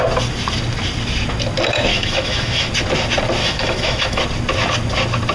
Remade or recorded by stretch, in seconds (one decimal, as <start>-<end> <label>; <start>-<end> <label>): 0.0-1.9 recorded; 1.9-2.7 remade; 2.7-3.4 recorded; 3.4-4.2 remade; 4.2-5.3 recorded